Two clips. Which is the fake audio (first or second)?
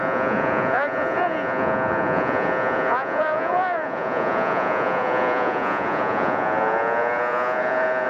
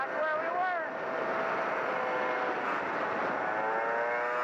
first